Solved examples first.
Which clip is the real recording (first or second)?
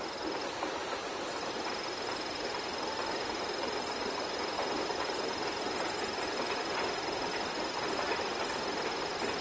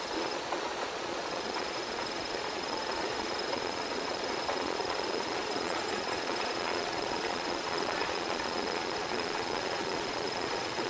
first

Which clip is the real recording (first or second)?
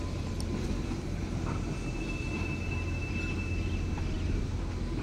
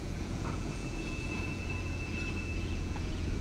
first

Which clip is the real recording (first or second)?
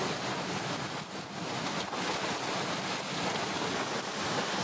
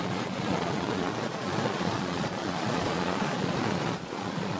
first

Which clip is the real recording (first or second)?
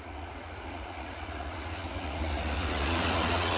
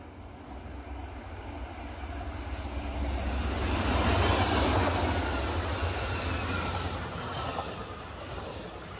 second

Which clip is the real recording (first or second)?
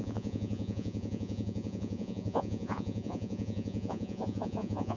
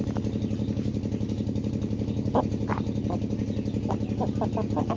second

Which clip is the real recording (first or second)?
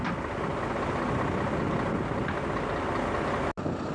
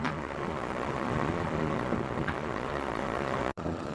first